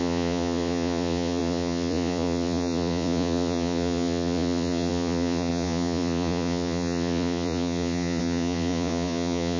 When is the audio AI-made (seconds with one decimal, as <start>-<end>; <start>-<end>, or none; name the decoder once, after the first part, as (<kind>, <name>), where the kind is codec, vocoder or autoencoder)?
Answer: 0.0-9.6 (vocoder, Vocos)